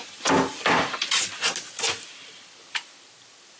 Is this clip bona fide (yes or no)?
yes